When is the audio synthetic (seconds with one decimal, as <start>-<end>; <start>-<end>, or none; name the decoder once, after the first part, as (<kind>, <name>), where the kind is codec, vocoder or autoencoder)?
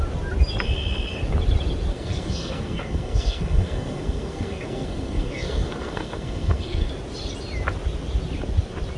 1.9-6.9 (codec, SNAC)